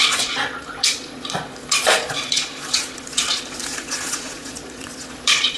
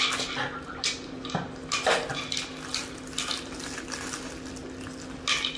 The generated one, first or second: first